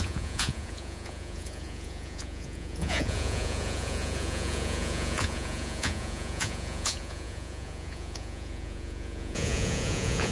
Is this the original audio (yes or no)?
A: no